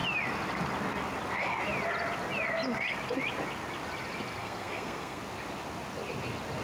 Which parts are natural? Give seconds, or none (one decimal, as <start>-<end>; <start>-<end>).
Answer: 0.0-4.4; 5.2-6.6